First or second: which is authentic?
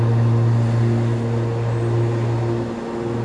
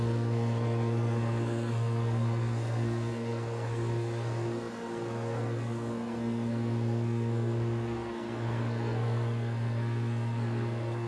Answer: first